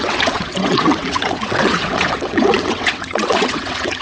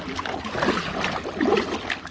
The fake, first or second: first